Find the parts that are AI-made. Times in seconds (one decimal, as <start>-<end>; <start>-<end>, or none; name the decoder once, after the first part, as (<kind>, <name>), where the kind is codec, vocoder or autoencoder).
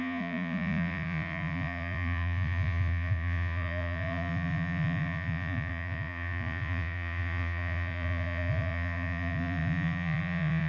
0.0-10.7 (vocoder, Vocos)